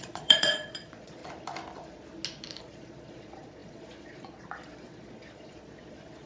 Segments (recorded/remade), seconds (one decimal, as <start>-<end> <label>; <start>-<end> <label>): 0.0-1.2 remade; 1.2-2.6 recorded; 2.6-6.3 remade